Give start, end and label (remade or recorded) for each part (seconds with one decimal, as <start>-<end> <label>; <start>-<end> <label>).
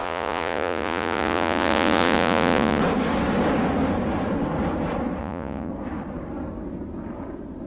0.0-2.8 remade; 2.8-5.2 recorded; 5.2-5.7 remade; 5.7-7.7 recorded